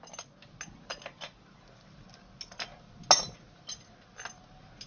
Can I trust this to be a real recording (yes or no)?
yes